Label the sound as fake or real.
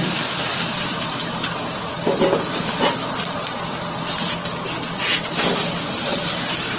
fake